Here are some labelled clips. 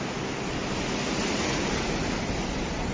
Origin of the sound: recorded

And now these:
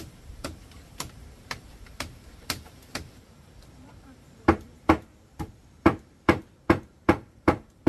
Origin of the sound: remade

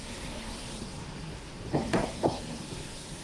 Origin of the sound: remade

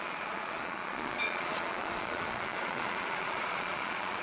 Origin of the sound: remade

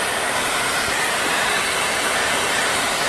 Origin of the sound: remade